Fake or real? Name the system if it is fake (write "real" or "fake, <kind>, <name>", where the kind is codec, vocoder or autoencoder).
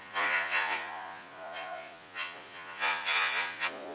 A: fake, vocoder, Vocos